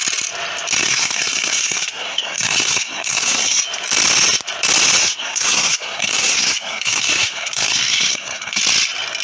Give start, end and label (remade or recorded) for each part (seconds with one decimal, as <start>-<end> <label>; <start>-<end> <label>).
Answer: 0.0-0.8 recorded; 0.8-3.6 remade; 3.6-5.0 recorded; 5.0-8.6 remade; 8.6-9.2 recorded